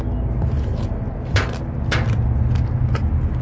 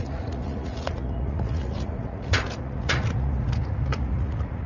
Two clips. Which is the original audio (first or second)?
first